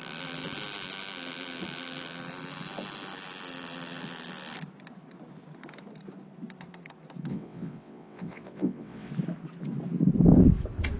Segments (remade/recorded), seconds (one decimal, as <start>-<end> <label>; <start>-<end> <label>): 0.0-7.3 recorded; 7.3-9.1 remade; 9.1-11.0 recorded